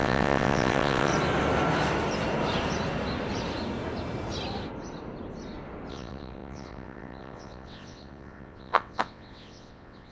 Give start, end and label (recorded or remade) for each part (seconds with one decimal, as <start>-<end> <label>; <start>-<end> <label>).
0.0-1.1 remade; 1.1-5.9 recorded; 5.9-10.1 remade